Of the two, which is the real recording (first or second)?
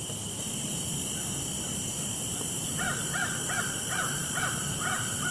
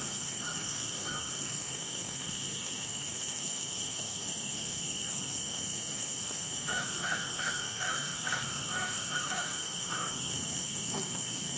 first